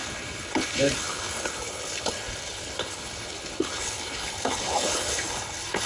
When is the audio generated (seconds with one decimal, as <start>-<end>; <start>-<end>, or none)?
0.0-5.9